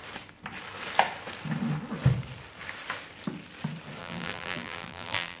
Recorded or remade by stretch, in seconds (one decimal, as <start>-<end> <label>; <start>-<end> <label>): 0.0-4.0 recorded; 4.0-5.4 remade